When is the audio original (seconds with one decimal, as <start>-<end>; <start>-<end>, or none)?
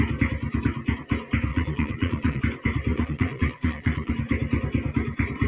0.0-1.5; 2.4-2.9; 4.1-5.5